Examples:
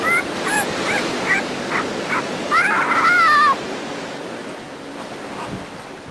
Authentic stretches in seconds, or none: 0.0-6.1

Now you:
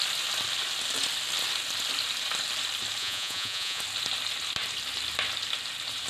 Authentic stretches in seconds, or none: 0.0-3.0; 3.8-6.1

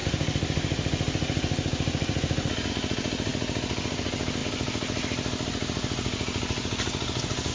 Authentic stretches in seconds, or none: 0.0-7.5